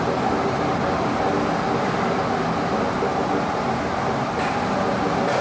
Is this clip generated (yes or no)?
no